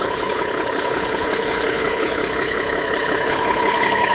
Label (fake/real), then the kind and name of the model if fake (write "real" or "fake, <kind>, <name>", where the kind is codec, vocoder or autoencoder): fake, codec, HILCodec